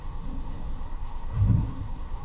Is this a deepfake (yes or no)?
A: yes